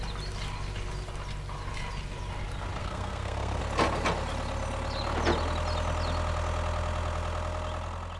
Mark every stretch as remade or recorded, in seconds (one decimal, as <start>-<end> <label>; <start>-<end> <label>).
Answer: 0.0-2.8 recorded; 2.8-3.6 remade; 3.6-8.2 recorded